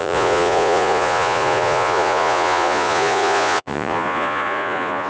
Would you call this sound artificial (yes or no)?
yes